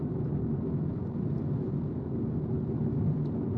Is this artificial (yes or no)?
no